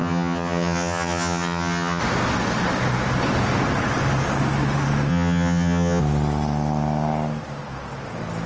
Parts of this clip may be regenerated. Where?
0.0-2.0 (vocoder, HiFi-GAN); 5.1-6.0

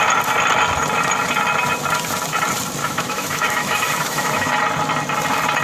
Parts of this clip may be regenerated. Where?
2.8-4.5 (autoencoder, DAC-VAE)

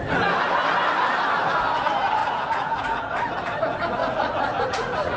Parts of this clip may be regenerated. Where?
2.2-3.3 (vocoder, Vocos); 4.0-5.2

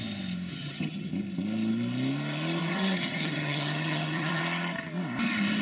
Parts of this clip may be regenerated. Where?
0.5-1.1 (vocoder, HiFi-GAN); 2.6-4.4

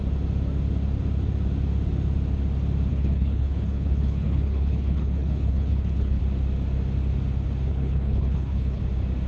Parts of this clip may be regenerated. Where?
2.9-6.2 (codec, HILCodec); 7.7-8.8

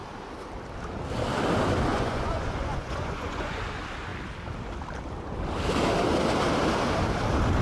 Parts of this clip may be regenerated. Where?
1.9-3.6 (vocoder, Vocos)

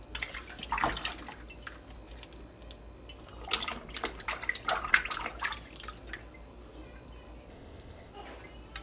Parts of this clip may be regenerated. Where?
7.5-8.1 (codec, ZipCodec)

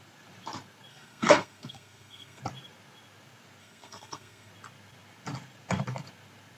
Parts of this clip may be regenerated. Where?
0.9-2.4 (codec, SNAC); 3.6-4.5